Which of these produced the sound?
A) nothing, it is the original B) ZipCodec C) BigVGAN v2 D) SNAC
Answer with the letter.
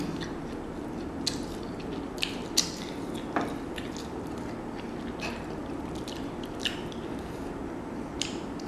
A